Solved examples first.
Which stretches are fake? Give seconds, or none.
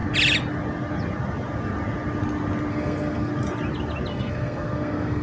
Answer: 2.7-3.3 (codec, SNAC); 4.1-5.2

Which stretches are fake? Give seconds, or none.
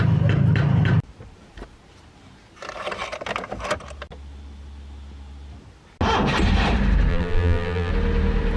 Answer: 7.1-7.9 (vocoder, BigVGAN v2)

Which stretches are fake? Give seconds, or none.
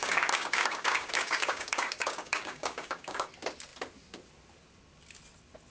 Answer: 0.0-3.3 (codec, DAC)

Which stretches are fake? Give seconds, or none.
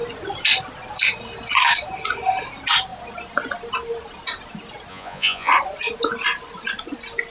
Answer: 4.9-5.5 (vocoder, Vocos)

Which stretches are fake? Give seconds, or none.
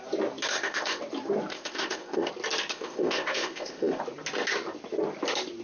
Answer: 0.5-1.0 (codec, ZipCodec); 1.5-2.3; 2.7-4.0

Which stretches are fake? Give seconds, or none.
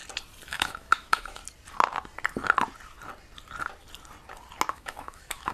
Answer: 0.5-1.4 (autoencoder, DAC-VAE); 4.7-5.5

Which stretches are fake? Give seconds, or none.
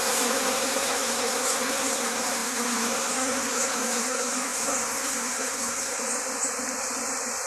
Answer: 0.0-6.0 (codec, SNAC)